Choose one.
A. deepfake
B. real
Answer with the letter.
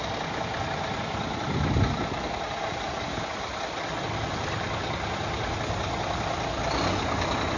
B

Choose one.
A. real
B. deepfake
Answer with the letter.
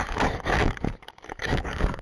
B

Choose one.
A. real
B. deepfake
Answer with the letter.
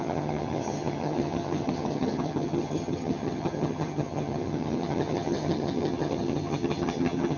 B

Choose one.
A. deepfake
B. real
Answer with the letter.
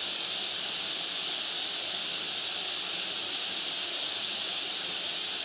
B